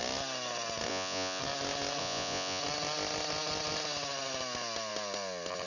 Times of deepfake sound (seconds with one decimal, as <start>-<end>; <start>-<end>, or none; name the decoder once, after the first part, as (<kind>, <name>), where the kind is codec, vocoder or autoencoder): 0.9-1.4 (vocoder, Vocos); 2.0-2.6